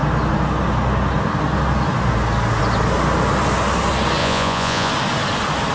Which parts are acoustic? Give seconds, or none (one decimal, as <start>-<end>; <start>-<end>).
0.0-4.2; 4.9-5.7